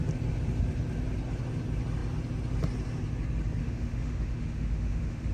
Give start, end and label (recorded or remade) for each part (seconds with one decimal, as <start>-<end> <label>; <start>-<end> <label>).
0.0-3.6 recorded; 3.6-5.3 remade